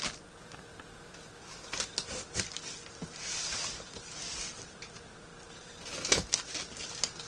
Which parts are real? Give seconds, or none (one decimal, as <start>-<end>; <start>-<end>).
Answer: 0.0-3.3; 4.7-5.3; 5.8-7.3